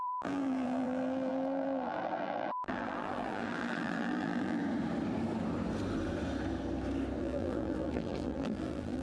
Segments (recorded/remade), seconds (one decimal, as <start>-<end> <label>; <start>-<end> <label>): 0.0-4.6 remade; 4.6-7.2 recorded; 7.2-9.0 remade